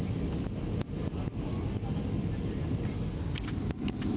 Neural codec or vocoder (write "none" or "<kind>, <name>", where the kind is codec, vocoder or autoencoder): none